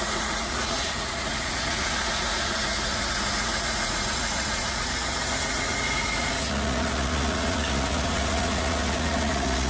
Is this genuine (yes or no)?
no